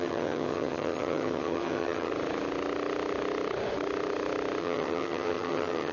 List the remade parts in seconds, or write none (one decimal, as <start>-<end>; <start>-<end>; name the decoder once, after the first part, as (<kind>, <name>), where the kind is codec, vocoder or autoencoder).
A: 0.0-2.1 (vocoder, HiFi-GAN); 4.6-5.9